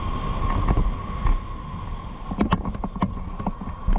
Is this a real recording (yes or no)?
yes